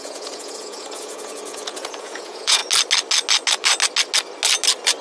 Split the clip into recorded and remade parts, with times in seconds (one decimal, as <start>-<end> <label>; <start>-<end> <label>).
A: 0.0-2.6 remade; 2.6-5.0 recorded